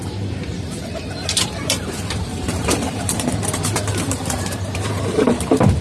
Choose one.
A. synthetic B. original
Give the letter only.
A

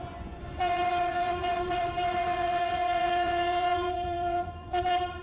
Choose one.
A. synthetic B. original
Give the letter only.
A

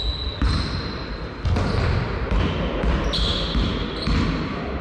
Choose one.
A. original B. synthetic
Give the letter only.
A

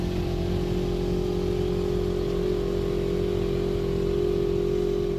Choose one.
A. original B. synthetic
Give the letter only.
A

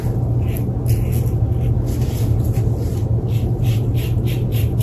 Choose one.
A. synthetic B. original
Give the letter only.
B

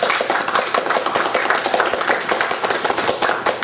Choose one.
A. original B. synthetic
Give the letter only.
A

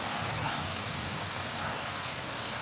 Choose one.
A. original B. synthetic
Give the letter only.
B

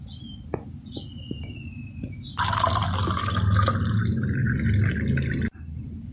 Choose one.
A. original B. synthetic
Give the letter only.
A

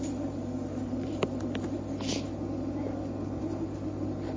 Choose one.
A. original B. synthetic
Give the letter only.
A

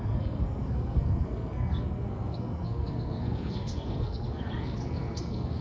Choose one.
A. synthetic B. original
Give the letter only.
A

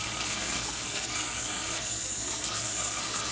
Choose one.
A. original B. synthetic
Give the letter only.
B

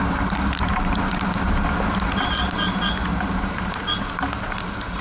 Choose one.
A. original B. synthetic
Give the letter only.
A